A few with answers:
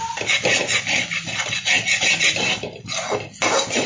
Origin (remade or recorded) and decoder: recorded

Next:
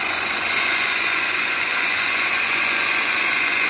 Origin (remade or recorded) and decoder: remade, vocoder, Vocos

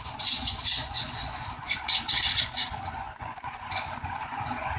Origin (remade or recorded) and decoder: remade, vocoder, Vocos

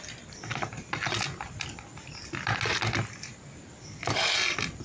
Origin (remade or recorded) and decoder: recorded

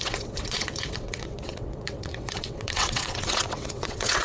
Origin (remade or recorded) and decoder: remade, vocoder, WaveNeXt